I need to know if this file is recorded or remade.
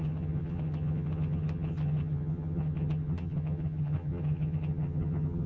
remade